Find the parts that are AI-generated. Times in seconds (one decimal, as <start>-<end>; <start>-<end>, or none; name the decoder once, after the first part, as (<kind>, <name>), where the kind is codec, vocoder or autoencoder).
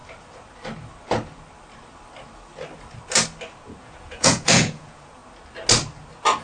3.8-5.2 (vocoder, Vocos)